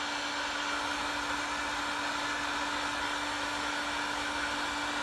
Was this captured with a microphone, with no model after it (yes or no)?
yes